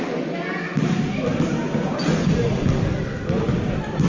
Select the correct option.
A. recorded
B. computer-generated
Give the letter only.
A